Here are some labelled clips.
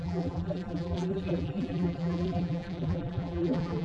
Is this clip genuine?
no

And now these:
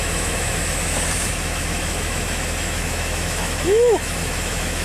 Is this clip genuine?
no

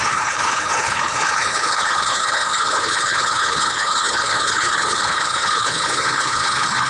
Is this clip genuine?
no